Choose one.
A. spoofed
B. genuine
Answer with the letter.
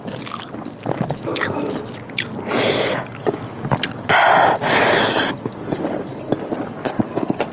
B